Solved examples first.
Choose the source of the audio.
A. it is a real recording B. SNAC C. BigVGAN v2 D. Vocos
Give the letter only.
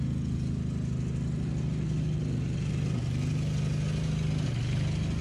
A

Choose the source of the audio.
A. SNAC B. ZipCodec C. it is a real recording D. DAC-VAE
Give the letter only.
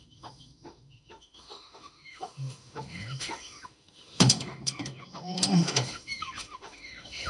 D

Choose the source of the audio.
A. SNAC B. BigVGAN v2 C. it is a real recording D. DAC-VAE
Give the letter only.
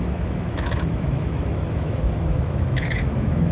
D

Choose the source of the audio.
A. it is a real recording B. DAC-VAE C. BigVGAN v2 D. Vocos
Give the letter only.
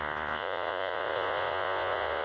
D